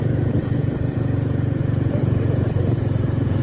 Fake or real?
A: fake